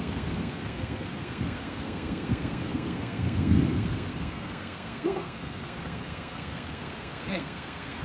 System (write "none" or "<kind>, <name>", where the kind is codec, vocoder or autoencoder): codec, SNAC